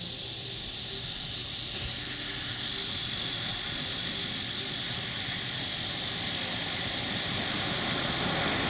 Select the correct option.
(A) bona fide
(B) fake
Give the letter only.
A